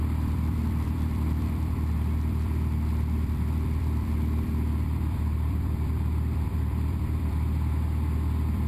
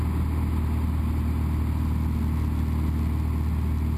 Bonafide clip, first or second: second